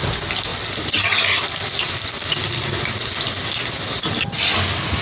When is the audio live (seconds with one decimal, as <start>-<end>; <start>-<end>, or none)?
0.0-5.0